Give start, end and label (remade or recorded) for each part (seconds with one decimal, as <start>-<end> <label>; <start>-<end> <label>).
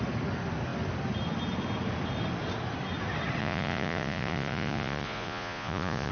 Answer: 0.0-3.4 recorded; 3.4-6.1 remade